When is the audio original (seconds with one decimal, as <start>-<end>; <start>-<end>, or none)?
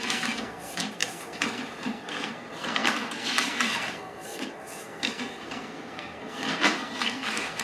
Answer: none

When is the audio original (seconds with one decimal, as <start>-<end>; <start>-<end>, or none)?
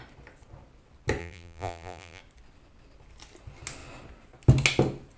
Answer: 0.0-1.2; 2.2-5.2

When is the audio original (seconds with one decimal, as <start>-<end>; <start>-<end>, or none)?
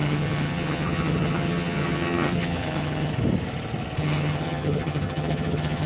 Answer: 3.1-4.0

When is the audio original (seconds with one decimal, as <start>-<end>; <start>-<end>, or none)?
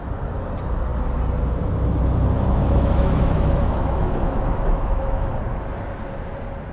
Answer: 0.0-2.6; 5.3-6.7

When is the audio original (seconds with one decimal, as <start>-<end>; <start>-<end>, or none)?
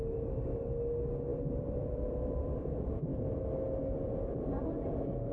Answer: 0.0-1.3; 2.6-5.3